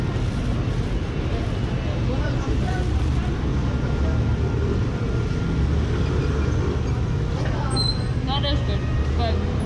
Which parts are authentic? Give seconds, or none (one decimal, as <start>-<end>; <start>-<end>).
0.0-9.7